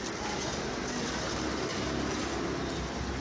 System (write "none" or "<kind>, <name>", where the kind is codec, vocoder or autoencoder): none